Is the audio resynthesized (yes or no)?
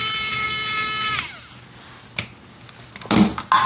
no